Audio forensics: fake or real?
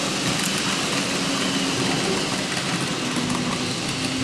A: real